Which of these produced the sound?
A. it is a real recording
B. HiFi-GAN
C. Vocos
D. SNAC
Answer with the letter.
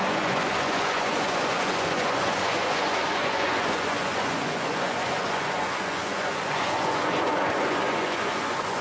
C